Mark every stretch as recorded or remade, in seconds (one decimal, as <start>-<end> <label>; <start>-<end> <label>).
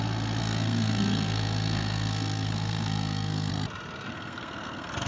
0.0-0.4 recorded; 0.4-3.5 remade; 3.5-4.1 recorded; 4.1-5.1 remade